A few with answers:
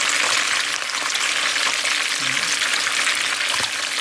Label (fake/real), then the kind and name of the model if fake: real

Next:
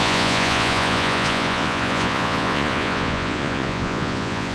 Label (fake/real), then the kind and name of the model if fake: fake, vocoder, Vocos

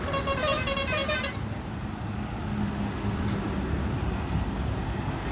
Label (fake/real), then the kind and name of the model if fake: real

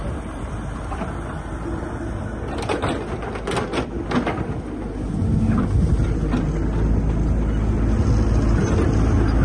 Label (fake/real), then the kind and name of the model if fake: real